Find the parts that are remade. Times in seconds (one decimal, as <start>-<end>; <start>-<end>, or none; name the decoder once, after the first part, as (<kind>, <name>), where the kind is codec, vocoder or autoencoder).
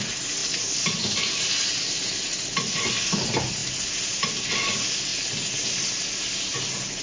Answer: none